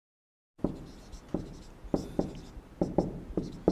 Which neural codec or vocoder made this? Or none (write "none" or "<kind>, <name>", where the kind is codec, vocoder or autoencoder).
none